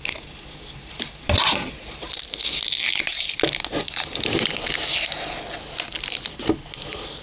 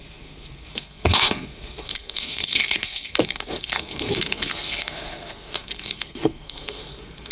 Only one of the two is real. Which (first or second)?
first